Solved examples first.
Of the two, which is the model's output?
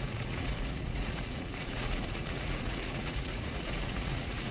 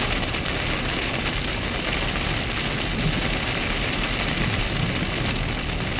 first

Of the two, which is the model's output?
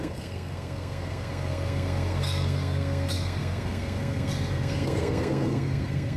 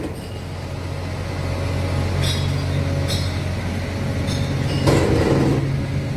first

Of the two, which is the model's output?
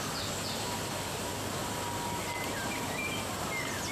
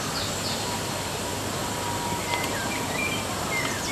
second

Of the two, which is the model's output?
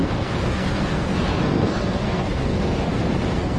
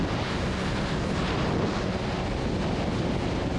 first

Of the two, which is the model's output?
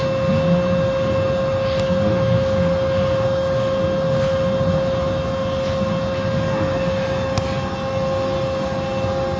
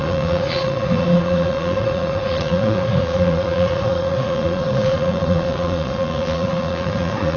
second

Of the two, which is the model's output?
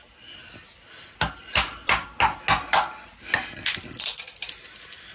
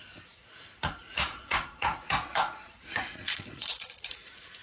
second